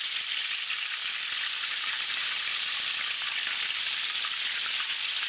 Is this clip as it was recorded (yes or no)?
yes